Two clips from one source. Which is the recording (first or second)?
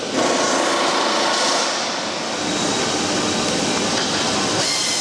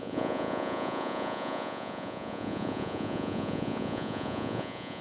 first